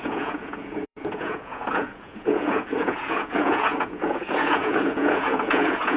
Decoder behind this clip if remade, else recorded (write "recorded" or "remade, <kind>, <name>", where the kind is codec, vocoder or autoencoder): remade, vocoder, Vocos